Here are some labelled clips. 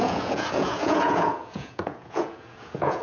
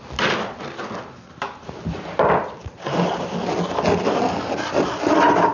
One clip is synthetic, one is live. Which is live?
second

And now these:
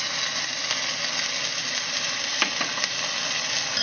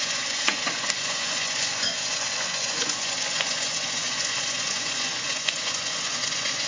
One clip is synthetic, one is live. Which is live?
first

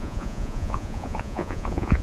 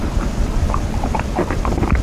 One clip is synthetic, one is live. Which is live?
second